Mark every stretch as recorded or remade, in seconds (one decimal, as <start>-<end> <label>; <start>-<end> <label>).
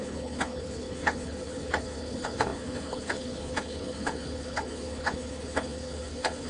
0.0-6.5 remade